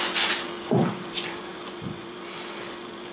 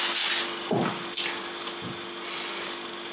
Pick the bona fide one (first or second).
second